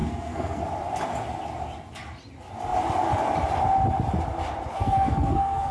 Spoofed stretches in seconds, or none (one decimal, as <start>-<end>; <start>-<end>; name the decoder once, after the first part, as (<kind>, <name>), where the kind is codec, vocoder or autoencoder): 0.0-0.6 (codec, SNAC); 4.7-5.7